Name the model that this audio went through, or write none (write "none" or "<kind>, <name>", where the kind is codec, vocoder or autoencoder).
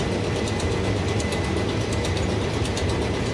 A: none